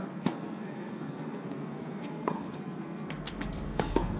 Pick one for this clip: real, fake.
fake